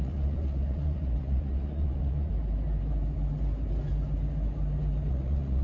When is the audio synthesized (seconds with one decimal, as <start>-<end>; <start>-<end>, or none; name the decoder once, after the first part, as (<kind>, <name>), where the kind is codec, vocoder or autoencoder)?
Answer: 0.0-2.3 (vocoder, Vocos); 5.1-5.6